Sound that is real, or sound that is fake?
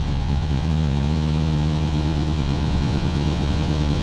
fake